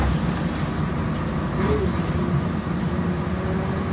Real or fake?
real